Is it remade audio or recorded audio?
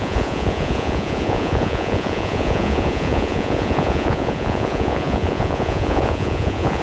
remade